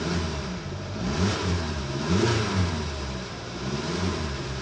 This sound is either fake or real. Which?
fake